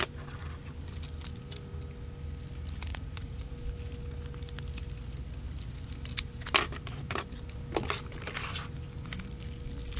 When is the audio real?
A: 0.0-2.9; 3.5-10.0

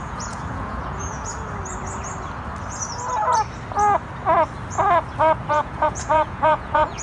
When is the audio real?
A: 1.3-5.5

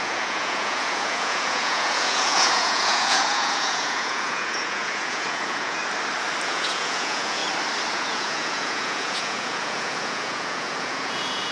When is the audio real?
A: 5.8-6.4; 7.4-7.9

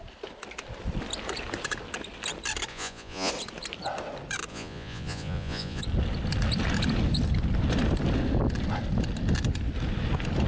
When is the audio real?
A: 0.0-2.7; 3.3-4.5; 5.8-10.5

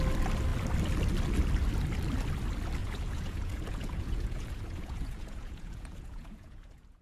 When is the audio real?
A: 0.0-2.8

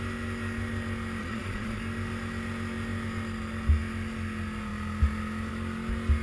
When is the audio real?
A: 0.0-1.2; 1.8-6.2